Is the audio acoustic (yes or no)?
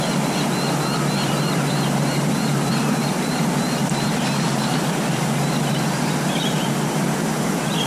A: no